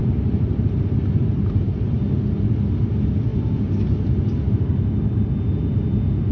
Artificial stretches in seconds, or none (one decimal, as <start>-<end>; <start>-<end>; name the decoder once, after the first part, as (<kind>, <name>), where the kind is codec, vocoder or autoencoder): 0.0-2.0 (vocoder, BigVGAN v2)